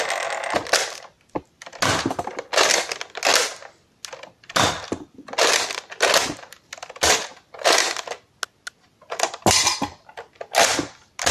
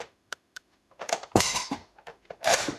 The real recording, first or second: first